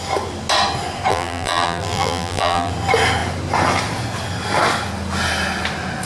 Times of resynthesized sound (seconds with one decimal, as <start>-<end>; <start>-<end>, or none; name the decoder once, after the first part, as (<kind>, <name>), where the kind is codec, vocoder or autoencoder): 1.1-2.7 (vocoder, BigVGAN v2)